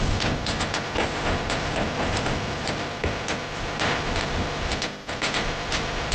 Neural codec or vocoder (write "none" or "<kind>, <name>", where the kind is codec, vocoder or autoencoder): none